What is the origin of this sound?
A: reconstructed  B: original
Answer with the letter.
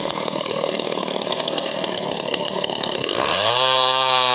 A